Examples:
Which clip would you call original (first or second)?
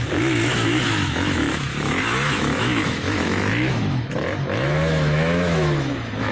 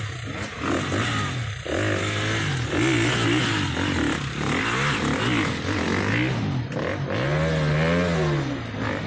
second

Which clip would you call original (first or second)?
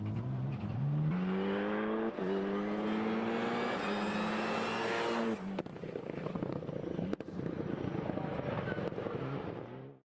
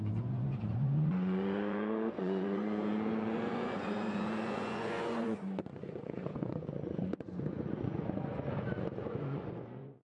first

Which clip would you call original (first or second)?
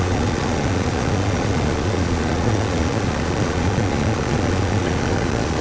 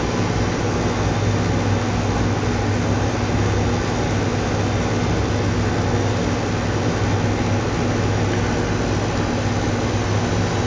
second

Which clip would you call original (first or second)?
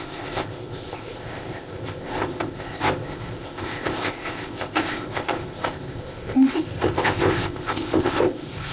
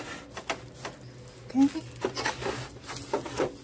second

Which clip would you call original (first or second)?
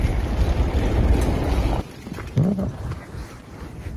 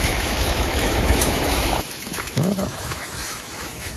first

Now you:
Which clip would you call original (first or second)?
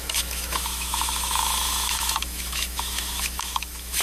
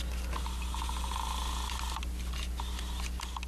second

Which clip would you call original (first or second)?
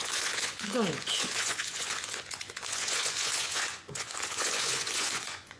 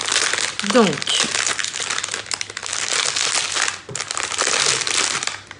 second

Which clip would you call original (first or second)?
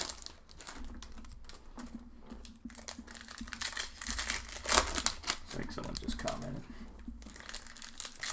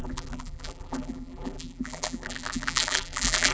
first